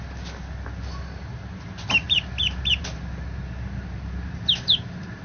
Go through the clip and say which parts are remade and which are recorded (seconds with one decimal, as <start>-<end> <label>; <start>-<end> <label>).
0.0-5.2 recorded